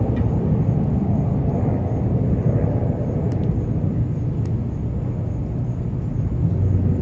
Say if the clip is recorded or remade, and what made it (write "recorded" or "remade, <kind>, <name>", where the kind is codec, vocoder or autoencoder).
recorded